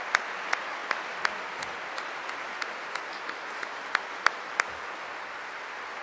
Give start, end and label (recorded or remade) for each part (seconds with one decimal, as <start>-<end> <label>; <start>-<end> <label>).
0.0-6.0 recorded